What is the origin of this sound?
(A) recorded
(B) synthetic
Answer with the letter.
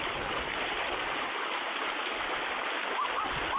A